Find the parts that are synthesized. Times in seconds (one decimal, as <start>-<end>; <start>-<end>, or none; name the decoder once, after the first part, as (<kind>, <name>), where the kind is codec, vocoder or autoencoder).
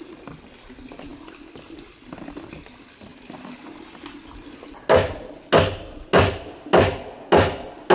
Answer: none